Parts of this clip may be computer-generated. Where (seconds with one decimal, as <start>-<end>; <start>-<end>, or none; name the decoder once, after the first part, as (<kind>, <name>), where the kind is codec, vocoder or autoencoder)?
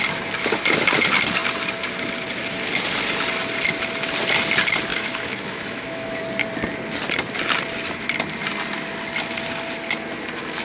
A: 4.9-6.2 (autoencoder, DAC-VAE)